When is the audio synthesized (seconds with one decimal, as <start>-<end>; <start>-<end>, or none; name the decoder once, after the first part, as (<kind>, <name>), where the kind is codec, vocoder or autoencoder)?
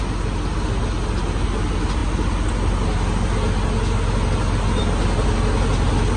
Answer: none